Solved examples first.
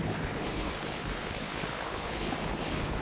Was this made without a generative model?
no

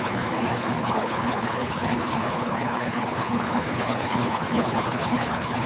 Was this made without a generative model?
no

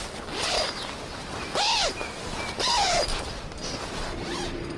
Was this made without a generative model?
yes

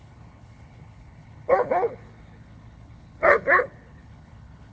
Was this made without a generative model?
no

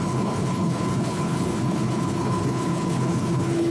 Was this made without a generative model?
no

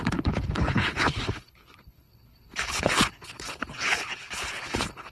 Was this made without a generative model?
no